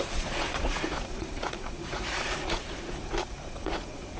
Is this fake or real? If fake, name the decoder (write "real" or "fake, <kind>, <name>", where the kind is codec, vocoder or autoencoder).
fake, vocoder, Vocos